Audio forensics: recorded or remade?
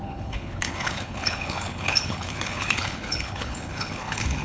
remade